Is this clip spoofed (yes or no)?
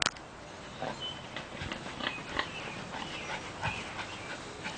no